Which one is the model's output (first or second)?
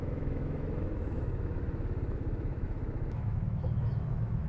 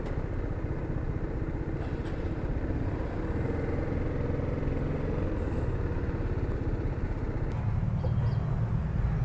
first